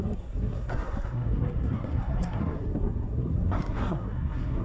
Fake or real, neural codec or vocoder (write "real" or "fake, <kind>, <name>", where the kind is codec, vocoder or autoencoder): fake, codec, SNAC